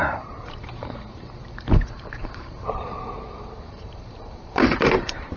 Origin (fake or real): fake